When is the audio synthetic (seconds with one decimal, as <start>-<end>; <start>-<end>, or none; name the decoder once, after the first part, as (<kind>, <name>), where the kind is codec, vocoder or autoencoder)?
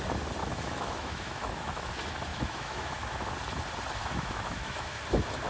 0.4-1.9 (autoencoder, DAC-VAE); 2.3-3.3; 4.0-5.0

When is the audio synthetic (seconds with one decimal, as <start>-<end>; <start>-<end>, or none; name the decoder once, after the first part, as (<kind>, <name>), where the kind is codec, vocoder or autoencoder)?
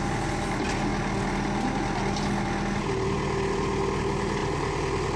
none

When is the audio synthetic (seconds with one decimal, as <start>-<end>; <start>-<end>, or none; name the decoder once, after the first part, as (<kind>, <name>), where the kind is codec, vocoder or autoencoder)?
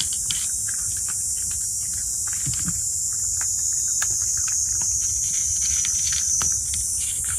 none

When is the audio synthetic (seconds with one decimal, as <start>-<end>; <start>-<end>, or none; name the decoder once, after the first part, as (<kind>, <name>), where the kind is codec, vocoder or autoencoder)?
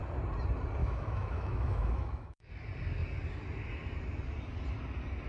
0.8-2.5 (autoencoder, DAC-VAE)